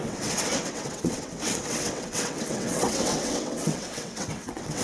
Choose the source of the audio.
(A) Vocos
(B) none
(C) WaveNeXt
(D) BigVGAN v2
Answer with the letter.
C